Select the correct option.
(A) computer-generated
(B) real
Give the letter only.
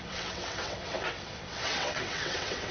A